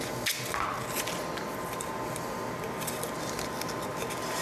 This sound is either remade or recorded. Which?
recorded